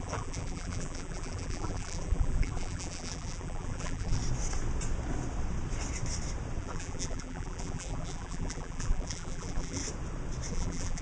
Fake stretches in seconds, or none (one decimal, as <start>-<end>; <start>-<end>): 0.0-4.2; 6.6-9.8; 10.5-11.0